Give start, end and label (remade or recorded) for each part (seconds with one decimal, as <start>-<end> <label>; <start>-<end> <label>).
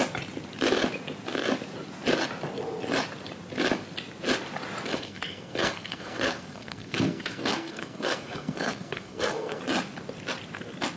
0.0-4.9 recorded; 4.9-9.6 remade; 9.6-11.0 recorded